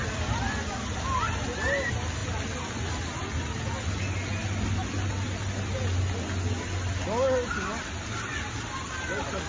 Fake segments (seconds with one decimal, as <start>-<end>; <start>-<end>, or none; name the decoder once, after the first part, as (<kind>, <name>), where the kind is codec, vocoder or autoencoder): none

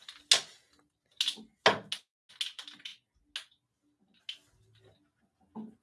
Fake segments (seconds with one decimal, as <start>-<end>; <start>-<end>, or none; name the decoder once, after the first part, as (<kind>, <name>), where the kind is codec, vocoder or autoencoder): none

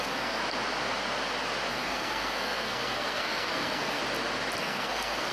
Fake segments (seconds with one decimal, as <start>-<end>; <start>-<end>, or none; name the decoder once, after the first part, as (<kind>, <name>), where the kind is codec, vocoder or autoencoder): 0.0-0.4 (codec, SNAC); 1.7-4.0; 4.6-5.3

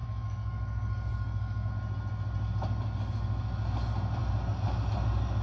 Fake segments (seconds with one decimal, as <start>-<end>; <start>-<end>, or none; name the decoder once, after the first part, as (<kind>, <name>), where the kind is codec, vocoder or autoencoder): 0.0-1.7 (codec, DAC)

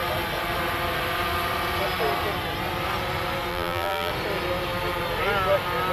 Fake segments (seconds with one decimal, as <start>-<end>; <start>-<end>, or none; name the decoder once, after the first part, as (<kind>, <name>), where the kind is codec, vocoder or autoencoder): 3.5-4.1 (vocoder, BigVGAN v2)

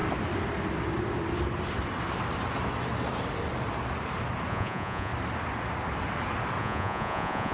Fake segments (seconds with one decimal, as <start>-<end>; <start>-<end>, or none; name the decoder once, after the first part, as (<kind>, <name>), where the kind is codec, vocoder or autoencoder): 4.5-5.1 (vocoder, Vocos); 6.6-7.5